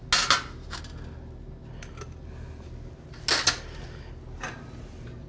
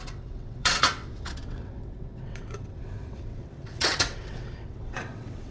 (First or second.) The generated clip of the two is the second